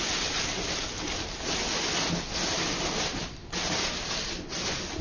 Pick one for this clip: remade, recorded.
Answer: recorded